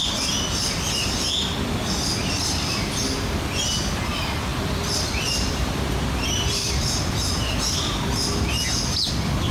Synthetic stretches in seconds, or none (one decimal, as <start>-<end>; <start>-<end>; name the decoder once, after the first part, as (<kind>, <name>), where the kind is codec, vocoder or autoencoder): 2.2-3.0 (vocoder, BigVGAN v2); 4.5-6.8